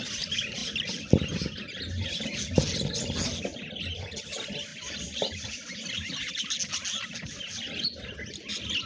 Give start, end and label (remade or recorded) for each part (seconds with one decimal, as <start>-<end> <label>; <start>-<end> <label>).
0.0-8.9 recorded